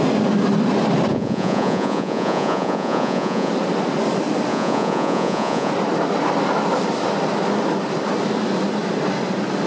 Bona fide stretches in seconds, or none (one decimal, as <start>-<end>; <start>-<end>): 0.0-1.1; 3.5-4.5; 5.7-9.7